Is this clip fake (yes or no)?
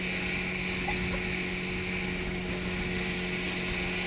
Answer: no